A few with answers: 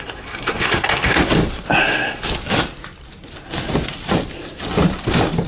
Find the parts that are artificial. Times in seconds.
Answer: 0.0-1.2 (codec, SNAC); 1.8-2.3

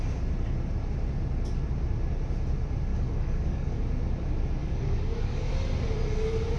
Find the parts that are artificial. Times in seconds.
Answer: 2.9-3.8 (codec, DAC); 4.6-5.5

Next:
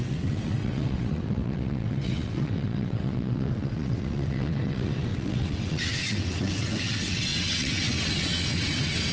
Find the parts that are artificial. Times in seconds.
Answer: 0.0-9.1 (vocoder, WaveNeXt)

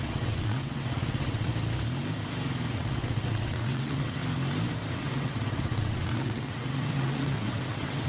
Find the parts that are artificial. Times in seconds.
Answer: 0.0-1.5 (vocoder, WaveNeXt); 2.7-4.2; 4.9-8.1

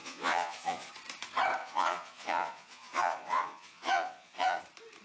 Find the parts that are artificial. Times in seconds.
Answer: 0.0-0.9 (vocoder, Vocos); 1.6-4.6

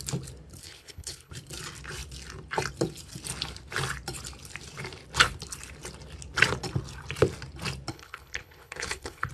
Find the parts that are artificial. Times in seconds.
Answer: 0.6-1.3 (codec, HILCodec); 7.9-9.3